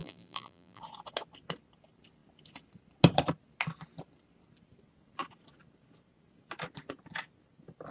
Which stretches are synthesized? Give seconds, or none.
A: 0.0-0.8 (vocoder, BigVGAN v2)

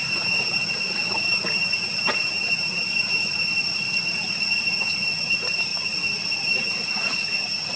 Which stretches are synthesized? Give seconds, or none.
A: 0.0-0.6 (vocoder, BigVGAN v2); 1.1-3.5; 5.3-5.7

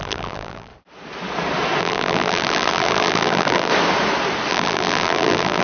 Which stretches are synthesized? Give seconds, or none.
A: 0.0-0.7 (vocoder, BigVGAN v2); 1.8-3.7; 4.5-5.6

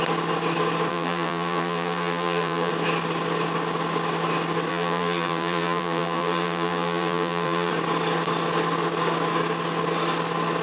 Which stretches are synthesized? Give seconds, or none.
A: 0.9-2.7 (vocoder, BigVGAN v2); 4.7-7.7

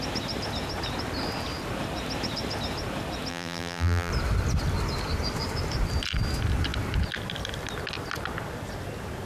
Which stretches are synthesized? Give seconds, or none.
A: 3.3-4.1 (vocoder, BigVGAN v2)

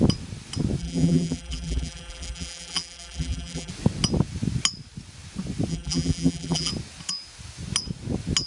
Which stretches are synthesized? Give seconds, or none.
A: 0.8-3.7 (vocoder, BigVGAN v2); 5.7-6.7